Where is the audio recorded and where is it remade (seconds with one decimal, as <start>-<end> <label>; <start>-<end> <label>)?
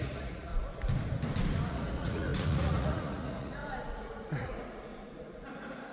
0.0-0.5 remade; 0.5-1.7 recorded; 1.7-5.9 remade